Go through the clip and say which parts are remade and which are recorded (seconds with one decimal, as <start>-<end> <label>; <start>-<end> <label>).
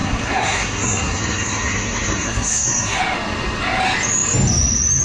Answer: 0.0-3.0 remade; 3.0-5.0 recorded